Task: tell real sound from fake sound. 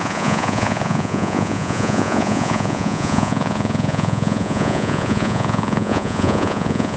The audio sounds fake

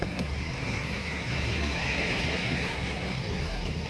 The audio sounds fake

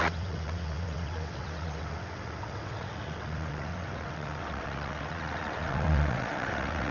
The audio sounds fake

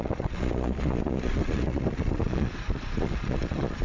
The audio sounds fake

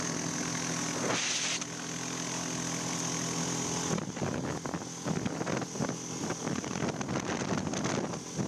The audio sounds real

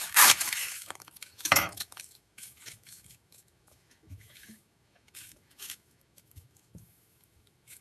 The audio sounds fake